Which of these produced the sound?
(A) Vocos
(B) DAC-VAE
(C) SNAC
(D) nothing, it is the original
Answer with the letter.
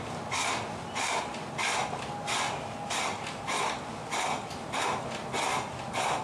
D